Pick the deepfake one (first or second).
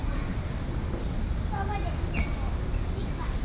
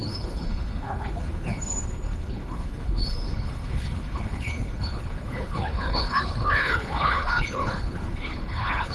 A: second